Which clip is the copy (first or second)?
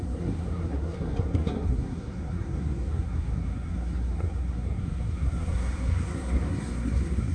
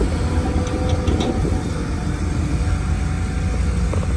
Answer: first